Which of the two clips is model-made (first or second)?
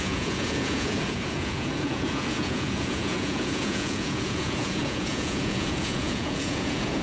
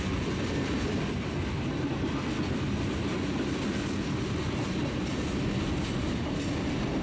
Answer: first